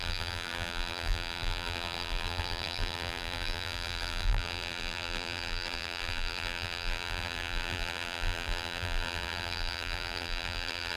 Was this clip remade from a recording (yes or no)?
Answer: yes